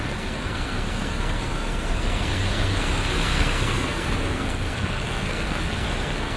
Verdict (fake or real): fake